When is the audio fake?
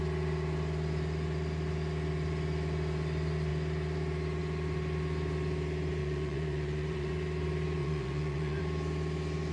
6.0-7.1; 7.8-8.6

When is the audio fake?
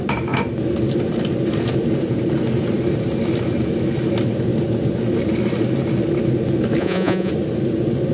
6.8-7.3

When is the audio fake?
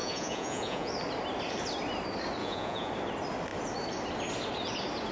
0.0-0.9; 2.4-2.9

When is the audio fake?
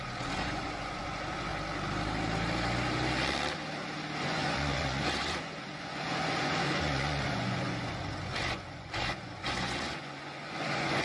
0.0-1.5; 4.2-11.0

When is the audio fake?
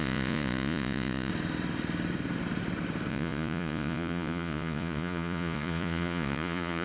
0.0-1.3; 3.1-6.8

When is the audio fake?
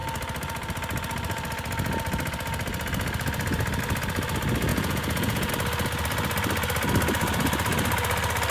4.7-5.5